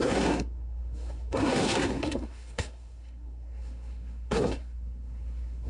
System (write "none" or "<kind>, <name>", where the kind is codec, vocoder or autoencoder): codec, SNAC